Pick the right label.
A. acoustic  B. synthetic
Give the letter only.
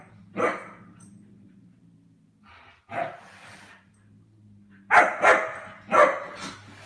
A